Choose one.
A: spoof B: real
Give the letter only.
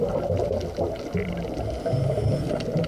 B